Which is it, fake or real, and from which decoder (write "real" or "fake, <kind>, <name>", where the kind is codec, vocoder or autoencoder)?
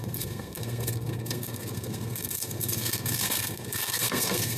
fake, codec, SNAC